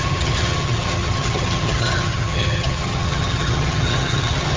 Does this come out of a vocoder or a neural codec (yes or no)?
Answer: yes